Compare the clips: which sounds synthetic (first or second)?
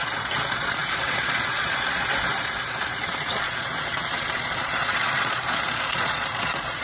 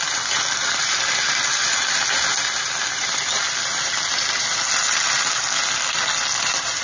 first